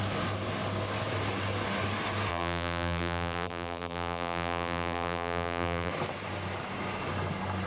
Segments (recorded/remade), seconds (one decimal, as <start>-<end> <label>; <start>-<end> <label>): 0.0-2.3 recorded; 2.3-5.9 remade; 5.9-7.7 recorded

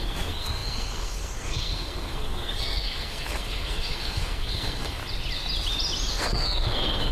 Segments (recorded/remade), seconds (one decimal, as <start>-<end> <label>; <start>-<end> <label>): 0.0-5.0 remade; 5.0-6.1 recorded; 6.1-7.1 remade

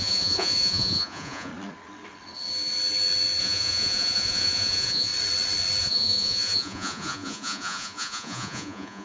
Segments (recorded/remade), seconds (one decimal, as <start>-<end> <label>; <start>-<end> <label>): 0.0-1.5 remade; 1.5-3.4 recorded; 3.4-5.1 remade; 5.1-5.8 recorded; 5.8-9.0 remade

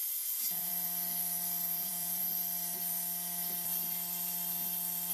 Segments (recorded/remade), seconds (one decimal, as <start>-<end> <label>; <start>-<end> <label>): 0.0-0.7 remade; 0.7-1.6 recorded; 1.6-2.3 remade; 2.3-5.1 recorded

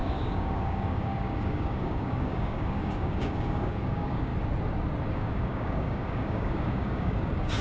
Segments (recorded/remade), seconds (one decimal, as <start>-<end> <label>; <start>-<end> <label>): 0.0-4.3 remade; 4.3-5.1 recorded; 5.1-7.6 remade

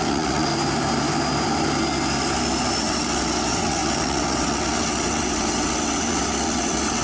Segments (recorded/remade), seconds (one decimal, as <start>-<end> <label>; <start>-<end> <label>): 0.0-0.5 remade; 0.5-2.8 recorded; 2.8-7.0 remade

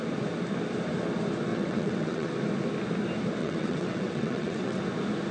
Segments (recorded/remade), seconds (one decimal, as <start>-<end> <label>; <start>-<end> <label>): 0.0-1.5 recorded; 1.5-2.3 remade; 2.3-3.4 recorded; 3.4-4.8 remade; 4.8-5.3 recorded